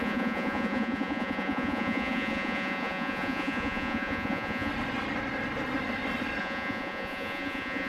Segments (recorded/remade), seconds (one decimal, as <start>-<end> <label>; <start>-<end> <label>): 0.0-4.7 remade; 4.7-6.4 recorded; 6.4-7.9 remade